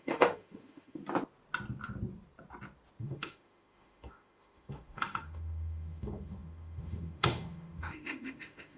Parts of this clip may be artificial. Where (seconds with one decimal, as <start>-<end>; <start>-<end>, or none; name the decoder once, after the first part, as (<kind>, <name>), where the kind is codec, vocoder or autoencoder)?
0.0-1.0 (autoencoder, DAC-VAE); 3.0-8.8